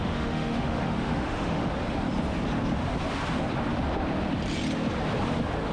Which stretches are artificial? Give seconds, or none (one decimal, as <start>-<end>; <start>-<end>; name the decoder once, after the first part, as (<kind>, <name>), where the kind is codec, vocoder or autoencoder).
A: 0.0-1.7 (autoencoder, DAC-VAE)